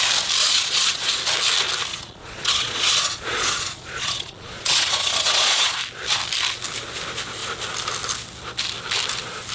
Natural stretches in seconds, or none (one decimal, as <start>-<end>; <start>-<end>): 0.0-0.4; 1.1-1.9; 5.8-9.5